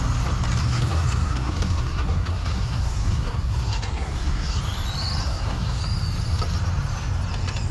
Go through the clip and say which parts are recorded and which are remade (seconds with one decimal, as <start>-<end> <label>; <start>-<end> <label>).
0.0-0.6 recorded; 0.6-4.6 remade; 4.6-5.2 recorded; 5.2-5.8 remade; 5.8-7.7 recorded